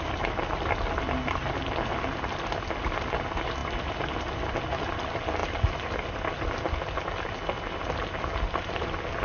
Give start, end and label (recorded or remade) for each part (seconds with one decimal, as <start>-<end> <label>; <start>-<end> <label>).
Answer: 0.0-9.2 recorded